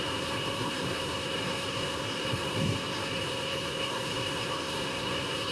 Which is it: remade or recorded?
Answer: remade